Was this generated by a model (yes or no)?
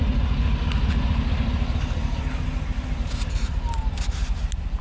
no